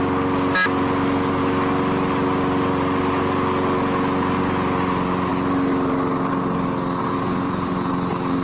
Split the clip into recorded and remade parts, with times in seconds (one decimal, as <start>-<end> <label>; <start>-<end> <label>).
0.0-7.0 recorded; 7.0-7.9 remade; 7.9-8.4 recorded